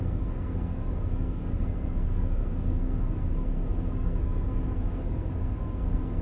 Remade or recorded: remade